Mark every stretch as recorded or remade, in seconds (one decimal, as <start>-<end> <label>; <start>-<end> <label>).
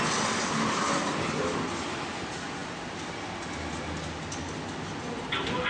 0.0-5.7 recorded